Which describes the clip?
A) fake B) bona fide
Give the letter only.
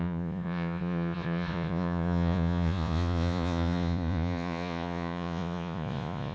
A